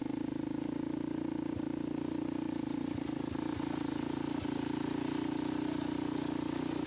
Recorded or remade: recorded